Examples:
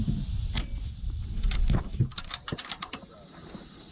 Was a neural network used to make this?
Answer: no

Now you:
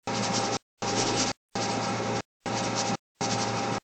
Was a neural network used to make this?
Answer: no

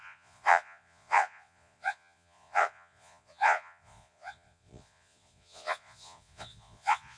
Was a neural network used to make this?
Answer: yes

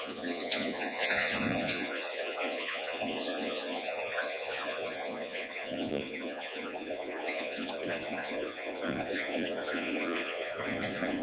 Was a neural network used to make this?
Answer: yes